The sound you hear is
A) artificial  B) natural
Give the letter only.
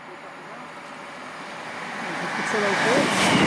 B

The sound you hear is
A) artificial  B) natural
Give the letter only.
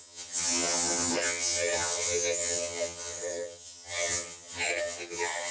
A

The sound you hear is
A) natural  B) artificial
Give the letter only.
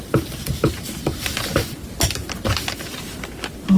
A